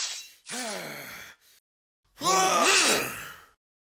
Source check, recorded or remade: recorded